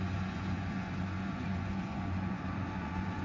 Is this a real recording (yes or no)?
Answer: no